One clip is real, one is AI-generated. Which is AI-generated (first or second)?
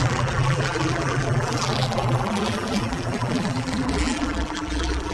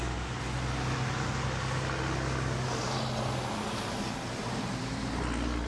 first